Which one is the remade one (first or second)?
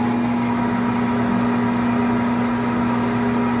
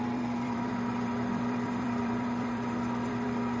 second